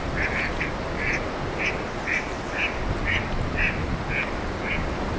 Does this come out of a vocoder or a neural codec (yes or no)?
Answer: no